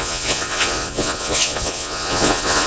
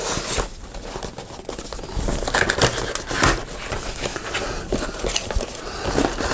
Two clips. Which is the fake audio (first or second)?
first